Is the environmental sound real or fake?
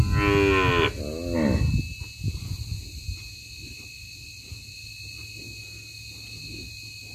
real